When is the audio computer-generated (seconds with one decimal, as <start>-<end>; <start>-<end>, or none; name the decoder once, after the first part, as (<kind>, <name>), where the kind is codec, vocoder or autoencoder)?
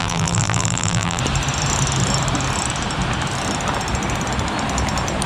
0.0-1.2 (vocoder, BigVGAN v2)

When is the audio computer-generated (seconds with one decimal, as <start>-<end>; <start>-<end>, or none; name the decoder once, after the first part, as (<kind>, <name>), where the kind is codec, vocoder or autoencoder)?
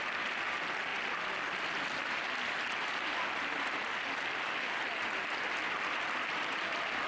none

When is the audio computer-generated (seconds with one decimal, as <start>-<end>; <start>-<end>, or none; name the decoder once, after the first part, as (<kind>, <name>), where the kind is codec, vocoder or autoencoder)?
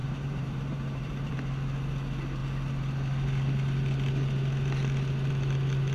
0.0-1.3 (vocoder, BigVGAN v2)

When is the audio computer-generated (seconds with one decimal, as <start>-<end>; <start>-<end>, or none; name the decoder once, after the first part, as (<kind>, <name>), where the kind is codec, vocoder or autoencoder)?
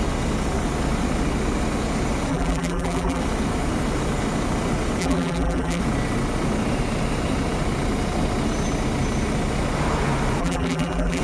2.3-3.2 (vocoder, BigVGAN v2); 5.0-5.8; 10.4-11.2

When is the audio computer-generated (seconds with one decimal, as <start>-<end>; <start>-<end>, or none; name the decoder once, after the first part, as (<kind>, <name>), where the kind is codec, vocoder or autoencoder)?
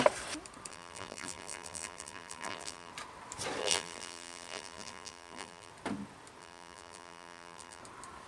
0.7-2.9 (vocoder, BigVGAN v2); 3.6-5.7; 6.4-7.8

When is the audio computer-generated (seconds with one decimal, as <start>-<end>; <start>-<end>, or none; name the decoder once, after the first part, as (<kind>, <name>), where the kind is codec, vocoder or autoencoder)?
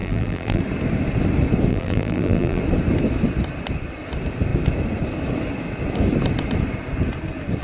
0.0-0.6 (vocoder, BigVGAN v2); 1.7-2.6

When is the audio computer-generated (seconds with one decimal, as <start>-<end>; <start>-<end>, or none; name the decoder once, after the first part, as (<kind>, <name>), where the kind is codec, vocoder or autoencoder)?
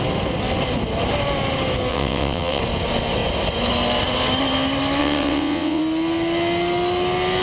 1.9-2.6 (vocoder, WaveNeXt); 5.0-5.8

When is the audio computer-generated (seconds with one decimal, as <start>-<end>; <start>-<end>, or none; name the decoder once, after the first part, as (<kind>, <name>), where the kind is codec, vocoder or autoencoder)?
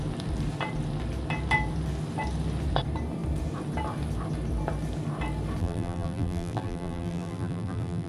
5.6-8.1 (vocoder, BigVGAN v2)